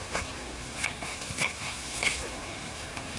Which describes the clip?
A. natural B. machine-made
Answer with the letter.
B